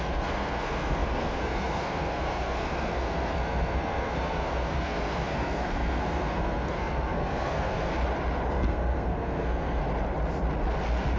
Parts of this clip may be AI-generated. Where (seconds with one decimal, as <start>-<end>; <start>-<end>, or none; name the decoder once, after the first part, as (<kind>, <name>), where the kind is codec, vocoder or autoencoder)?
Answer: 0.0-7.9 (codec, SNAC); 8.5-9.8